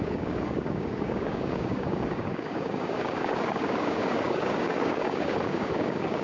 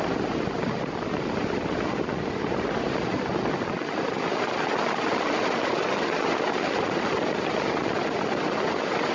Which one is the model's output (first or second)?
first